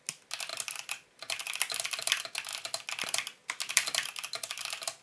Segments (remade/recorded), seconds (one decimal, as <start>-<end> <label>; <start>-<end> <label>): 0.0-5.0 recorded